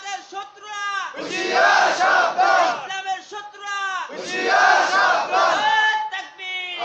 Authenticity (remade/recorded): recorded